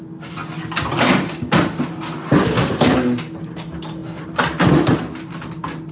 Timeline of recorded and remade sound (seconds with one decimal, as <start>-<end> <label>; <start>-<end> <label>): 0.0-5.9 recorded